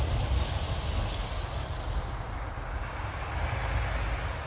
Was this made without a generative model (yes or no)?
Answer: yes